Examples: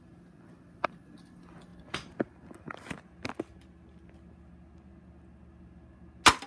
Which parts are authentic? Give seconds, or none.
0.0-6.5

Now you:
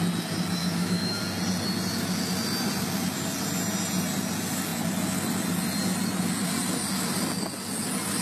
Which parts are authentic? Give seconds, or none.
0.0-0.6; 1.2-8.2

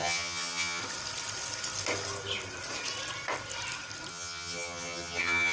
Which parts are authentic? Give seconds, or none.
0.8-4.1

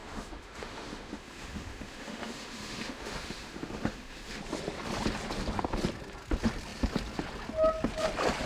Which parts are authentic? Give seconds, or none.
4.4-8.5